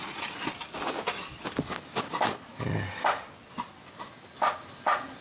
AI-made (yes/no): no